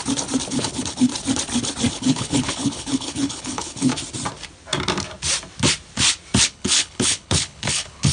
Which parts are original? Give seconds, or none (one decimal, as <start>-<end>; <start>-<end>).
0.0-0.5; 1.1-1.9; 3.9-6.4

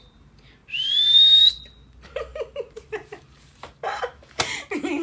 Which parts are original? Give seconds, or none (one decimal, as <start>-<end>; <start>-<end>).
0.6-1.5

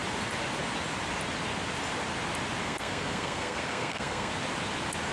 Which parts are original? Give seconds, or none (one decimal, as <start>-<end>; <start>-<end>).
0.0-2.6; 4.3-5.1